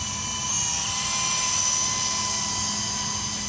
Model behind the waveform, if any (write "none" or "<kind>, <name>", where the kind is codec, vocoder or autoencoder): none